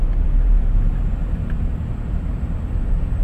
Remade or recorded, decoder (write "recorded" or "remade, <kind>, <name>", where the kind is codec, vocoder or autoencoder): remade, vocoder, BigVGAN v2